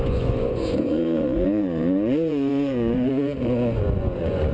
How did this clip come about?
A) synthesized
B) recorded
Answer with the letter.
A